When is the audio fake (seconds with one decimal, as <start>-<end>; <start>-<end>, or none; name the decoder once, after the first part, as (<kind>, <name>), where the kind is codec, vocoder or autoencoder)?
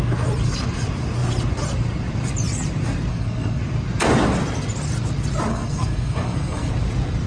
3.1-3.6 (codec, SNAC); 5.5-6.7